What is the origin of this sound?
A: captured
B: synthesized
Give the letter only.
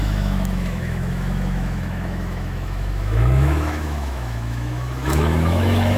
B